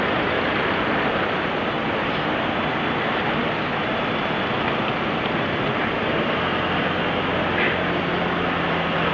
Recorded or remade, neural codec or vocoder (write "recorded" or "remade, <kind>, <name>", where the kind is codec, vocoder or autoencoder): recorded